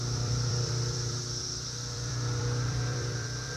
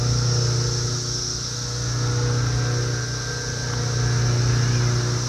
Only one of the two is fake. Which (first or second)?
first